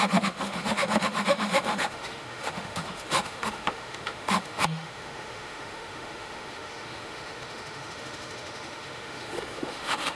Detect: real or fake fake